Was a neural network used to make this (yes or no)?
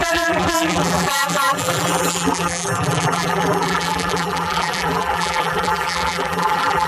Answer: yes